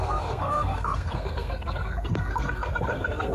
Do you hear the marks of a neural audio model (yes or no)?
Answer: yes